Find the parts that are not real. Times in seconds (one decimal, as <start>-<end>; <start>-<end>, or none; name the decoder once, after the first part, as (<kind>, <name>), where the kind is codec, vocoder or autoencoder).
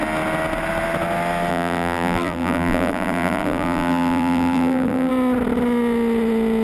1.5-5.1 (vocoder, BigVGAN v2)